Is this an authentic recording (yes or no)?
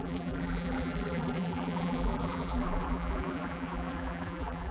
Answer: no